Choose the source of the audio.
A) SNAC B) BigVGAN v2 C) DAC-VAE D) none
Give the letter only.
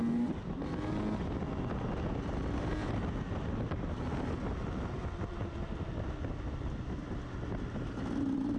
D